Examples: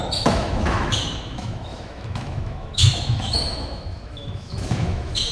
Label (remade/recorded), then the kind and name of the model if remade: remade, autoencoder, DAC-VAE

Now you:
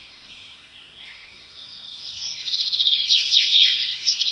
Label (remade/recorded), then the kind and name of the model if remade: remade, codec, SNAC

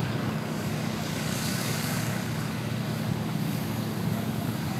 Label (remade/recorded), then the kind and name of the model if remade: remade, codec, DAC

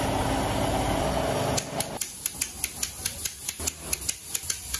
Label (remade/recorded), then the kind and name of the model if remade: recorded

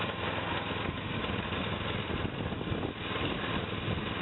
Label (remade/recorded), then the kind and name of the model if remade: recorded